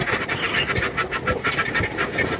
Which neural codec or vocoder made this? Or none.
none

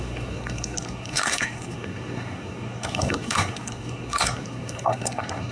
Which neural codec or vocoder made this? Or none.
codec, SNAC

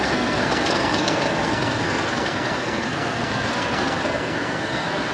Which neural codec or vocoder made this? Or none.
codec, SNAC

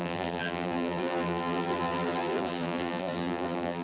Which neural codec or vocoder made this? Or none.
vocoder, BigVGAN v2